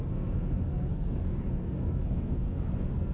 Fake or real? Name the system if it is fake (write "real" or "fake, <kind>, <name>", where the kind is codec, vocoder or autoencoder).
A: fake, codec, SNAC